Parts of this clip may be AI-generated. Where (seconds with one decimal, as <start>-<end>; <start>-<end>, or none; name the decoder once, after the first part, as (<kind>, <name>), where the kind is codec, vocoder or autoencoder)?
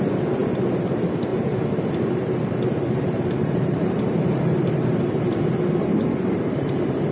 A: 1.3-5.2 (vocoder, BigVGAN v2)